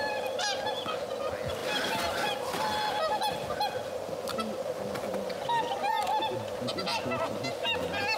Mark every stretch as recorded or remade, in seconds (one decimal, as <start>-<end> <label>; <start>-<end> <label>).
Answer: 0.0-8.2 recorded